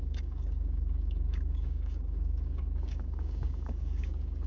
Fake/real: fake